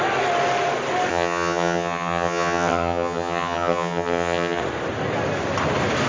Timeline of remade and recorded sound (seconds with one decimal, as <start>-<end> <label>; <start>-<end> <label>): 0.0-1.1 recorded; 1.1-4.6 remade; 4.6-6.1 recorded